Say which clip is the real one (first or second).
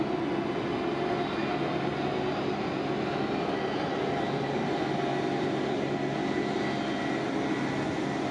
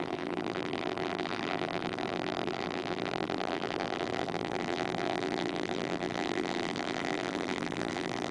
first